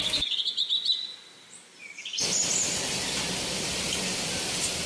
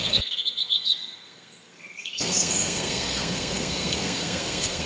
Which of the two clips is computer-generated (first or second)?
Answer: second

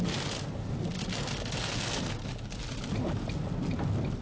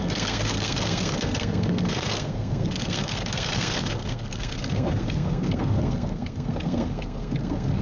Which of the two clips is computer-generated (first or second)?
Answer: second